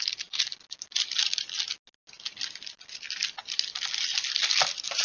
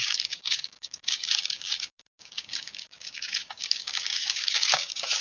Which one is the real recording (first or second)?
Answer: first